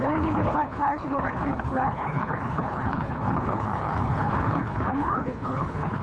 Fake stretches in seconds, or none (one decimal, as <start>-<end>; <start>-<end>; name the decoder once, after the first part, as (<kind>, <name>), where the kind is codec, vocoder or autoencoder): 0.0-6.0 (codec, HILCodec)

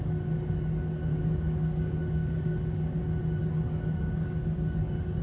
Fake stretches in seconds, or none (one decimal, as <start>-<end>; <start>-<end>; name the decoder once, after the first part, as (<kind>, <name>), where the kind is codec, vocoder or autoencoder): 1.1-3.0 (codec, DAC); 3.4-5.2

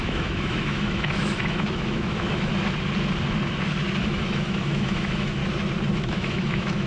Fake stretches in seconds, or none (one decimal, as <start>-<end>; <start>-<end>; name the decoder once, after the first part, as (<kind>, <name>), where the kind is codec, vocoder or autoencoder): 0.0-2.5 (autoencoder, DAC-VAE); 4.0-5.4; 5.9-6.9

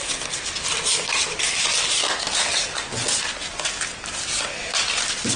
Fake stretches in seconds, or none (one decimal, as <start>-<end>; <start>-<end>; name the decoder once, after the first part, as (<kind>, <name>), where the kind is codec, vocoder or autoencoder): none

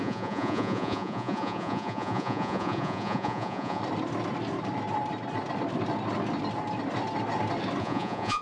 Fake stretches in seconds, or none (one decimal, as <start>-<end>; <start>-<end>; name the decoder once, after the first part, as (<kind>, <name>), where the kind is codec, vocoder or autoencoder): 0.0-3.8 (vocoder, Vocos); 7.8-8.4

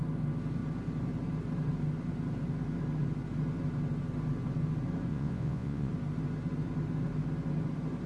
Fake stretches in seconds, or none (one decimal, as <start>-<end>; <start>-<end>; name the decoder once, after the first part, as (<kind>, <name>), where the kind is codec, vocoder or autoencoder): 5.1-5.9 (vocoder, Vocos)